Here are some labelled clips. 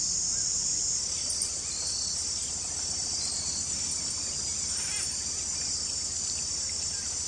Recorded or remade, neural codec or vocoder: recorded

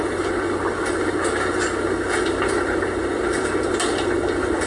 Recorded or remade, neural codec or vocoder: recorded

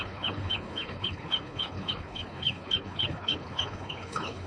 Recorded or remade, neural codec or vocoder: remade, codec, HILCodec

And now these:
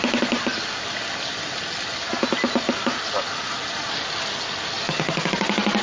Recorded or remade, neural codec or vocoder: recorded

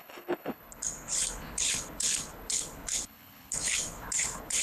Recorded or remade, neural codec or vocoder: remade, codec, HILCodec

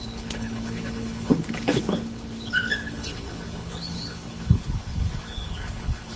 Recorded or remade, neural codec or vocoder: remade, codec, HILCodec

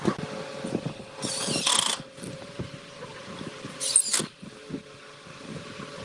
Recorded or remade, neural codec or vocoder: recorded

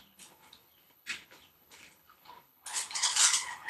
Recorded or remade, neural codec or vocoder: remade, codec, HILCodec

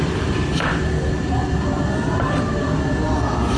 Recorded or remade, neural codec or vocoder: recorded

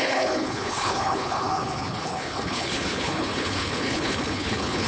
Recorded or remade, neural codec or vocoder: remade, codec, HILCodec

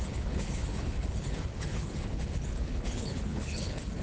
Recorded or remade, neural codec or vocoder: remade, codec, HILCodec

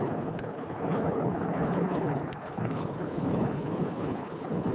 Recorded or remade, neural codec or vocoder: remade, codec, HILCodec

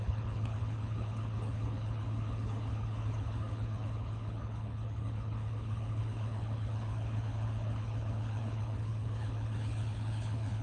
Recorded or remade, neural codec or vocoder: remade, codec, HILCodec